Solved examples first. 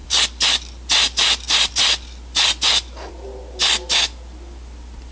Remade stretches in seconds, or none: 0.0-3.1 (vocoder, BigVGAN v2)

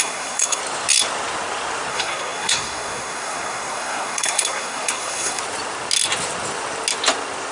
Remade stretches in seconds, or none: 0.0-0.6 (codec, SNAC); 1.9-5.4

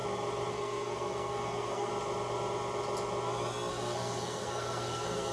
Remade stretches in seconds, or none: 0.5-1.9 (codec, SNAC); 3.7-5.3

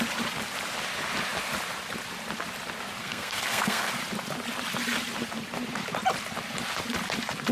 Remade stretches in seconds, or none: 3.0-3.9 (codec, SNAC)

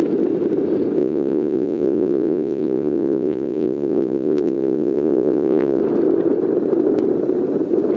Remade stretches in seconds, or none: 1.0-5.8 (vocoder, Vocos)